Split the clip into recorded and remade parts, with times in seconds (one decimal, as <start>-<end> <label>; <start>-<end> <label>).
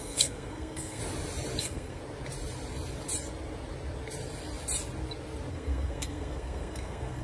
0.0-1.0 remade; 1.0-1.6 recorded; 1.6-2.0 remade; 2.0-5.5 recorded; 5.5-7.2 remade